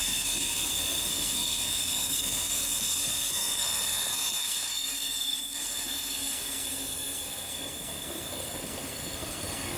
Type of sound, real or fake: fake